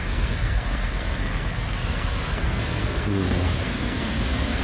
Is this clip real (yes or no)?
no